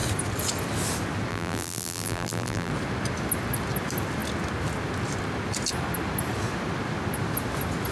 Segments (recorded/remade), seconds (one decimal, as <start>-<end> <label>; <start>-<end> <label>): 0.0-1.3 recorded; 1.3-2.7 remade; 2.7-7.9 recorded